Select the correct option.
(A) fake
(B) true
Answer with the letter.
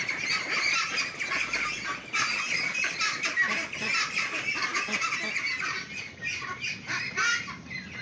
B